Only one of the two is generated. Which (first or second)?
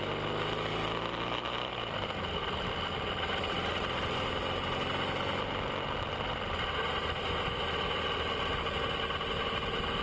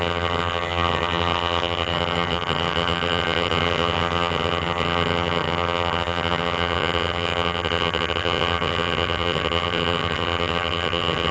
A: second